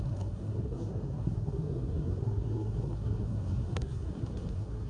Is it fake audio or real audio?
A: fake